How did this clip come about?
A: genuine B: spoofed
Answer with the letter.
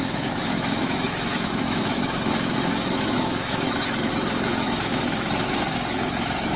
B